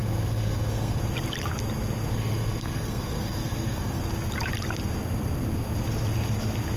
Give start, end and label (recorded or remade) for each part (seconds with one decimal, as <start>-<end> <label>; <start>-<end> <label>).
0.0-1.0 remade; 1.0-2.1 recorded; 2.1-4.0 remade; 4.0-6.8 recorded